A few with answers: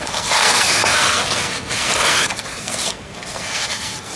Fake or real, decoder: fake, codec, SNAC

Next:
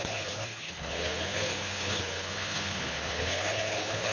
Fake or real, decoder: fake, codec, HILCodec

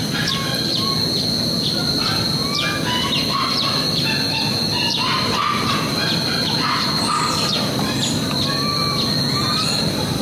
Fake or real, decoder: real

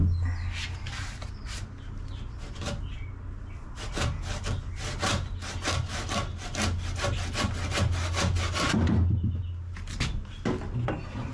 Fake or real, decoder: real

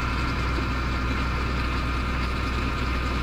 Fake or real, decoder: real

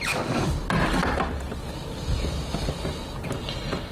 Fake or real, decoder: real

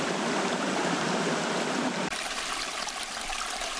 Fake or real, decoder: fake, vocoder, BigVGAN v2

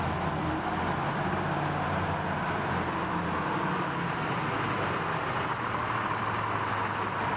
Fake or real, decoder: real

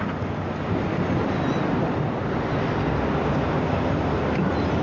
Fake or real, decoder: real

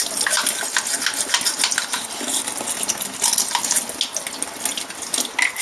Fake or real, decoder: real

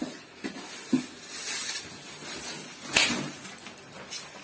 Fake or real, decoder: real